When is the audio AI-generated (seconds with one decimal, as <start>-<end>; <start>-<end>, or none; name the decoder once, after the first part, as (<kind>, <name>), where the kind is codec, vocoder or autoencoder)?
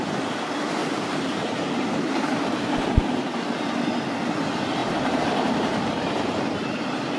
0.8-2.4 (vocoder, BigVGAN v2); 4.8-5.9